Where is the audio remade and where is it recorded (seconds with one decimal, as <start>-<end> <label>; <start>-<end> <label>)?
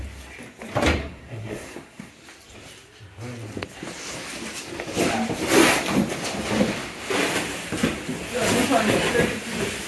0.0-1.0 recorded; 1.0-2.1 remade; 2.1-9.9 recorded